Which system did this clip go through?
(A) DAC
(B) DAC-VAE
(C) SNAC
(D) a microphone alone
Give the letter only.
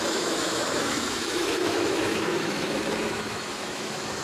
B